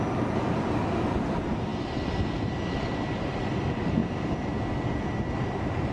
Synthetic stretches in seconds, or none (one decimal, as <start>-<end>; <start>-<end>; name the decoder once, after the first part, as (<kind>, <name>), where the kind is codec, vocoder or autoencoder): none